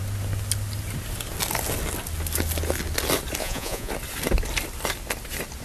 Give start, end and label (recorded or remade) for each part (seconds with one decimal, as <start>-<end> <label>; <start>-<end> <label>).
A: 0.0-3.4 recorded; 3.4-3.9 remade; 3.9-5.6 recorded